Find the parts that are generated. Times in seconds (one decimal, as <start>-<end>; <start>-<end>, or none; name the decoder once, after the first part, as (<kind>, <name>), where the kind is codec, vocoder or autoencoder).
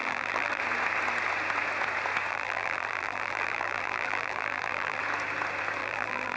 0.0-0.6 (vocoder, BigVGAN v2); 2.3-5.0; 5.8-6.4